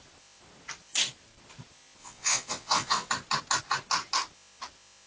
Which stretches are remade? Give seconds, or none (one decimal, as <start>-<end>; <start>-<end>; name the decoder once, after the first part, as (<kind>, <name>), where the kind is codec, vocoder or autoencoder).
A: 2.0-3.1 (vocoder, WaveNeXt)